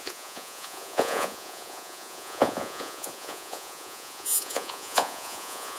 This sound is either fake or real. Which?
fake